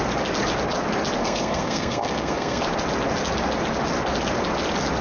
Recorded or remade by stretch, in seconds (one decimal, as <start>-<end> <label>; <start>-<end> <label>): 0.0-1.2 recorded; 1.2-2.6 remade; 2.6-5.0 recorded